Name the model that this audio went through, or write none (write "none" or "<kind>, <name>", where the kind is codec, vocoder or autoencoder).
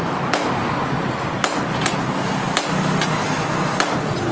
none